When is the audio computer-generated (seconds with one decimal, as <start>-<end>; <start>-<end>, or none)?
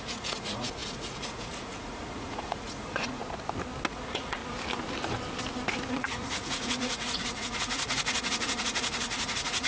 0.0-3.2; 3.9-4.4; 5.9-9.7